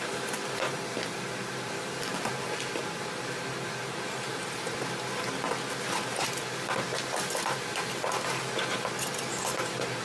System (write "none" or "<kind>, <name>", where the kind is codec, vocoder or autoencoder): none